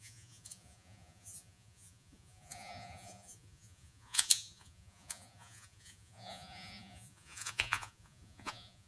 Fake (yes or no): yes